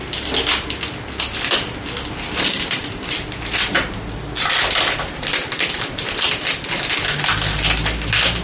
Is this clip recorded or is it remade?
recorded